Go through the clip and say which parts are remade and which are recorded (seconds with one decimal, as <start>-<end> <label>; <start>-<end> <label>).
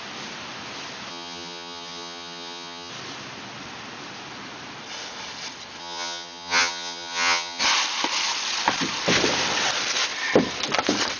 0.0-1.1 recorded; 1.1-2.9 remade; 2.9-5.8 recorded; 5.8-7.6 remade; 7.6-11.2 recorded